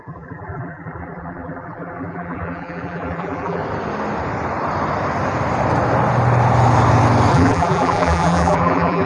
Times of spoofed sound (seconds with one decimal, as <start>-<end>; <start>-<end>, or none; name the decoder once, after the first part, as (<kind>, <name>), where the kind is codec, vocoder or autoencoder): 0.0-3.6 (vocoder, BigVGAN v2); 7.3-9.1